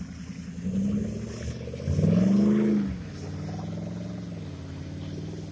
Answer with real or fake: real